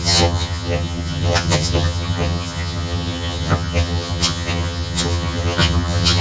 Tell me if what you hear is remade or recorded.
remade